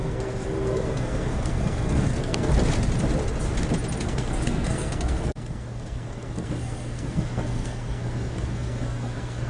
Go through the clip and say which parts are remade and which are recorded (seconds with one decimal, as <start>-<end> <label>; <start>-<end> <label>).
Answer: 0.0-2.5 remade; 2.5-4.0 recorded; 4.0-9.5 remade